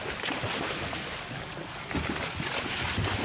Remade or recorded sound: recorded